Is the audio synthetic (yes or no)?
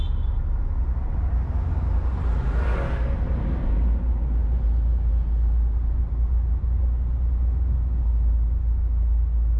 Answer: no